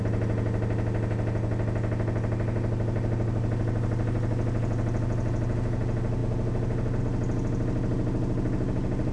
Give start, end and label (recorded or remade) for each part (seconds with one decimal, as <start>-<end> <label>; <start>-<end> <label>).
0.0-9.1 recorded